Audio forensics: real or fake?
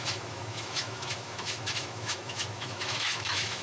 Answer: fake